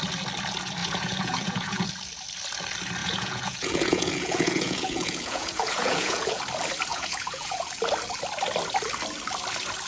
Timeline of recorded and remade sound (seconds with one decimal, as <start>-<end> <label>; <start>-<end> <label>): 0.0-0.8 recorded; 0.8-1.9 remade; 1.9-3.0 recorded; 3.0-6.4 remade; 6.4-6.9 recorded; 6.9-7.8 remade; 7.8-9.9 recorded